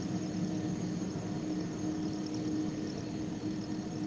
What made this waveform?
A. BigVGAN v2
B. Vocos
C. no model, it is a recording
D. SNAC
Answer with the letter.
C